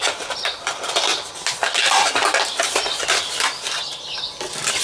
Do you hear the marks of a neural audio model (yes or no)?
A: no